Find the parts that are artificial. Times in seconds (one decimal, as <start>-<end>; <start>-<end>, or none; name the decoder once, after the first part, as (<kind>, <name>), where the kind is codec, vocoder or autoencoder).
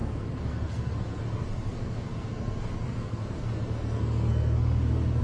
0.0-5.2 (codec, SNAC)